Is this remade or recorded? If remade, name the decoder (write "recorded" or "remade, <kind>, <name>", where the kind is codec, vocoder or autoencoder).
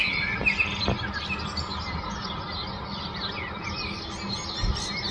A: recorded